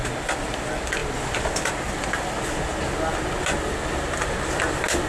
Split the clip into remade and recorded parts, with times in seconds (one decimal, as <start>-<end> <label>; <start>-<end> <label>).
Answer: 0.0-5.1 recorded